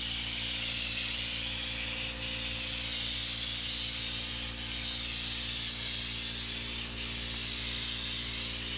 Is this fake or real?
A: real